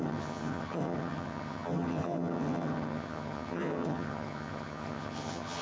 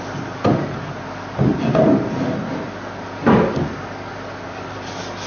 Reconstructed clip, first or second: first